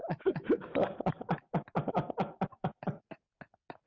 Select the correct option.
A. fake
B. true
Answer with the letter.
B